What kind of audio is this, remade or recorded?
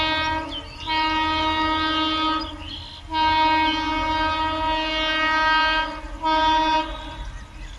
recorded